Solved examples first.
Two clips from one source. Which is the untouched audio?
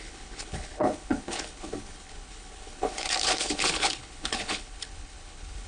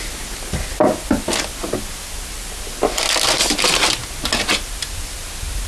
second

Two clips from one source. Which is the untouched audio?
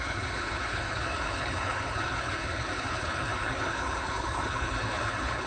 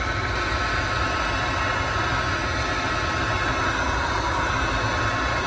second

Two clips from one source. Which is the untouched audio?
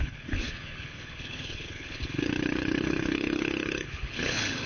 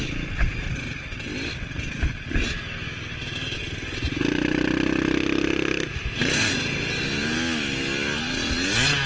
second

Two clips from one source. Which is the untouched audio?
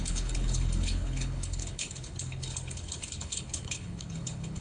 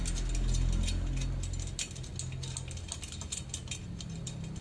second